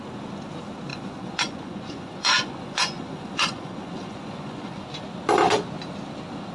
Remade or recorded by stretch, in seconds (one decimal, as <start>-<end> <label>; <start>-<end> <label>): 0.0-0.9 recorded; 0.9-4.8 remade; 4.8-6.5 recorded